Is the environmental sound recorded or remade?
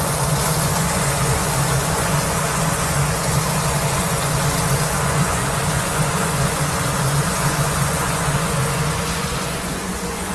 remade